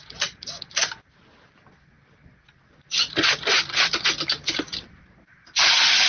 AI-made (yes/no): no